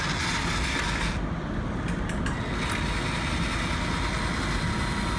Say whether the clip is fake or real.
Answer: real